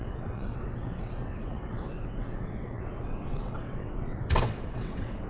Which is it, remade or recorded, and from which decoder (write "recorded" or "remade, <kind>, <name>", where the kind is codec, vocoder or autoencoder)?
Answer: remade, vocoder, WaveNeXt